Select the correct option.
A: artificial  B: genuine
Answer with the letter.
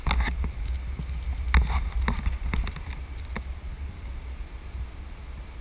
B